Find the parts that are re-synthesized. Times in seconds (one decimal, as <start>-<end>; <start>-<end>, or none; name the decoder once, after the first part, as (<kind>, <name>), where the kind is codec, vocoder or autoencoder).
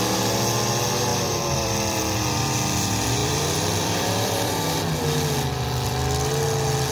1.1-2.0 (vocoder, BigVGAN v2); 3.2-4.8